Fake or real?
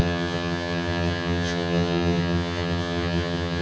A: fake